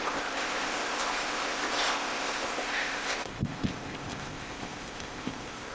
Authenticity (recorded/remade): remade